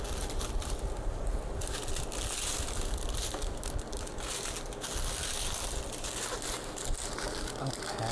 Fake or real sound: real